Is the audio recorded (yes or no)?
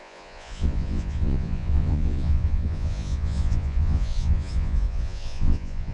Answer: no